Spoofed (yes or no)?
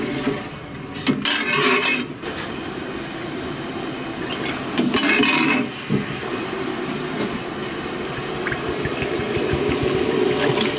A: no